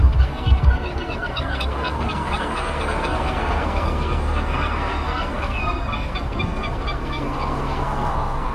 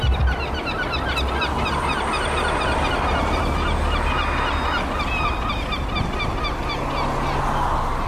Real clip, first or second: second